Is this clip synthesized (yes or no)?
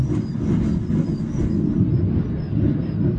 no